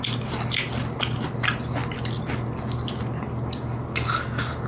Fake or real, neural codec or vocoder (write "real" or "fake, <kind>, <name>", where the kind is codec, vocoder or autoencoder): real